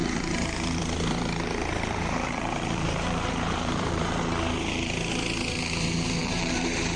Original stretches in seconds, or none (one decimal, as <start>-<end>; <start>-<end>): 4.2-6.2